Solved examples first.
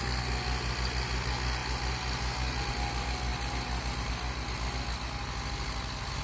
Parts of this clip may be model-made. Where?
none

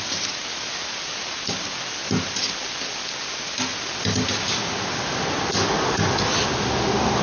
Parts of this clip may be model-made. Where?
none

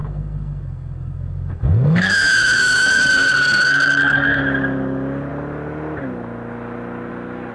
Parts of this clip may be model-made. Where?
0.0-4.4 (codec, SNAC)

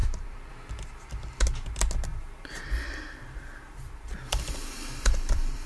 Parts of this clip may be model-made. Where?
0.0-0.5 (vocoder, BigVGAN v2); 2.1-5.7